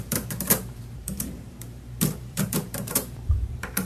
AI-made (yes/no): yes